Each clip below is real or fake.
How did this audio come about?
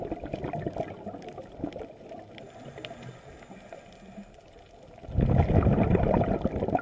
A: real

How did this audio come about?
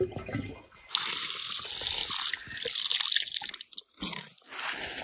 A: real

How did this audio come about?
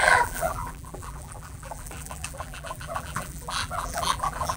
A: fake